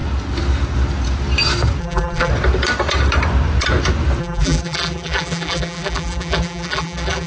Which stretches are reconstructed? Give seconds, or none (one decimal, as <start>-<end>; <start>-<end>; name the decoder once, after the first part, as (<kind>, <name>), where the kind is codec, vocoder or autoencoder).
1.8-2.3 (vocoder, BigVGAN v2); 4.2-7.3